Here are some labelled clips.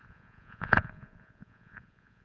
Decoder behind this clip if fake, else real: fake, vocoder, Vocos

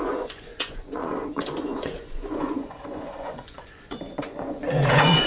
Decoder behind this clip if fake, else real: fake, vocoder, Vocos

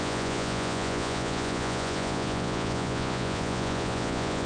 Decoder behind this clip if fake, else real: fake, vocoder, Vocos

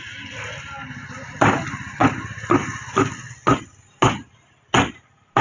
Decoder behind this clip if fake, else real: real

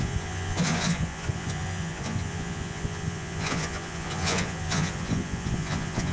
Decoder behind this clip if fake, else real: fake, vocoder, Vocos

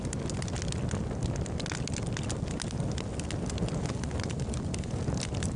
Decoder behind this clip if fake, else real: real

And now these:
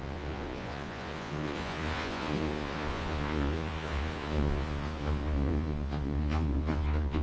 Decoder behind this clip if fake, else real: fake, vocoder, Vocos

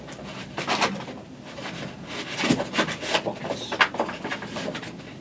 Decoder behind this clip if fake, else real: real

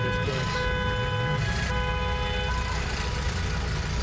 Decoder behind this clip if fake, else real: real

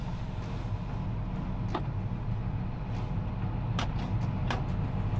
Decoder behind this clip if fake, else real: real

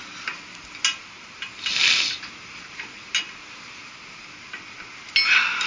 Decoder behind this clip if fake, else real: real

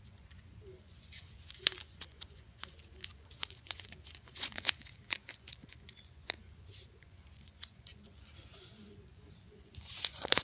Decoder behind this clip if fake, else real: fake, vocoder, Vocos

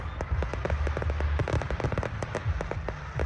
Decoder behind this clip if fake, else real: real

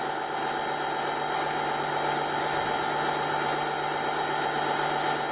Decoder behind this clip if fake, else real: real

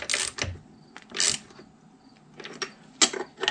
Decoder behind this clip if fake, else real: real